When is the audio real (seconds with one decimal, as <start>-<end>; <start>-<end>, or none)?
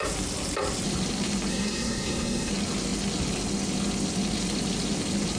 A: 0.0-1.5; 2.5-5.4